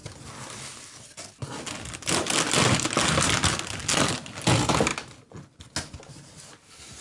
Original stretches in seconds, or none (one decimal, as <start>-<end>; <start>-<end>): 0.0-7.0